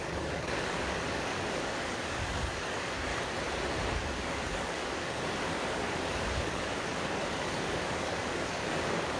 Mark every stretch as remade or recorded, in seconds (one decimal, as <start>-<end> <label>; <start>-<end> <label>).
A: 0.0-3.1 remade; 3.1-3.9 recorded; 3.9-9.2 remade